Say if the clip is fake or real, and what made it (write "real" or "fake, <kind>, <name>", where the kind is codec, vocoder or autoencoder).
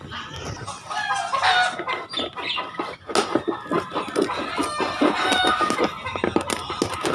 real